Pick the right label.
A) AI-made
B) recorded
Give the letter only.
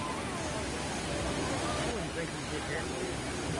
B